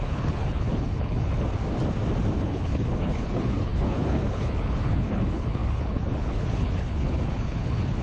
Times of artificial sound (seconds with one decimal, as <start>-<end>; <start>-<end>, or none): 0.0-1.3; 2.4-8.0